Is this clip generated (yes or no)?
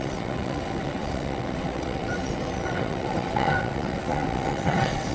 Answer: yes